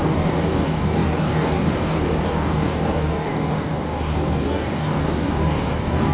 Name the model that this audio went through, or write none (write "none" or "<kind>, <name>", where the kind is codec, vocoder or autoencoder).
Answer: codec, DAC